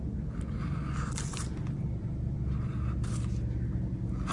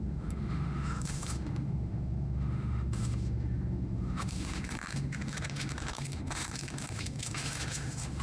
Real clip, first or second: first